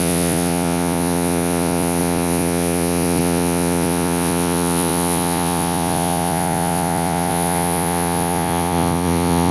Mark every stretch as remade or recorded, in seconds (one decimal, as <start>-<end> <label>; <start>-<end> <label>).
0.0-9.5 remade